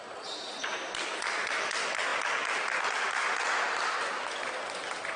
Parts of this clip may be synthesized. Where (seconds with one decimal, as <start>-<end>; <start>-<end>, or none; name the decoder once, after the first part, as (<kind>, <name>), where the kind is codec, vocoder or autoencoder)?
none